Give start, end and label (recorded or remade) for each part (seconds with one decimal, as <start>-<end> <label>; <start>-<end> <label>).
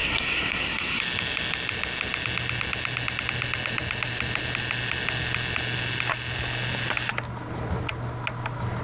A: 0.0-1.0 remade; 1.0-8.8 recorded